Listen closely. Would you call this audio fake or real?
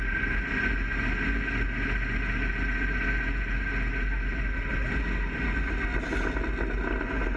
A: real